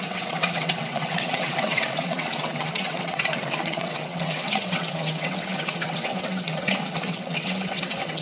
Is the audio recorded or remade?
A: remade